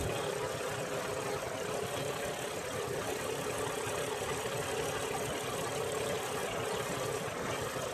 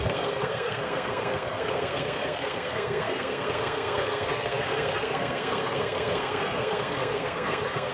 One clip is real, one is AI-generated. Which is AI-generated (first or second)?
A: second